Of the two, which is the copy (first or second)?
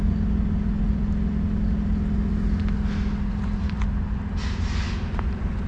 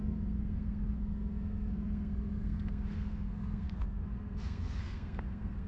second